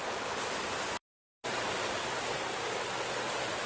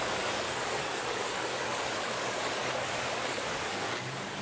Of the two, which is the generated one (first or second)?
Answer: second